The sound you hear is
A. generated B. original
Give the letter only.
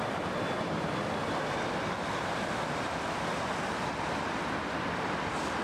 B